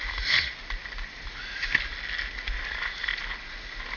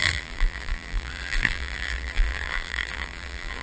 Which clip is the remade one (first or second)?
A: second